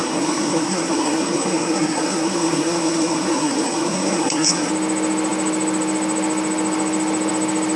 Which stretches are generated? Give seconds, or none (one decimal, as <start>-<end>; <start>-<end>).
0.0-4.7